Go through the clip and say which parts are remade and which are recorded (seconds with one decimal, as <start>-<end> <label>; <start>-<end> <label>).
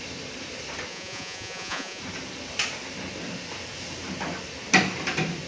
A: 0.0-0.9 recorded; 0.9-2.0 remade; 2.0-5.5 recorded